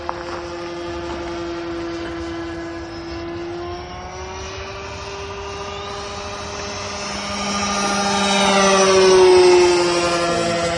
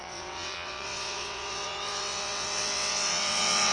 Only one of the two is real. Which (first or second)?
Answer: first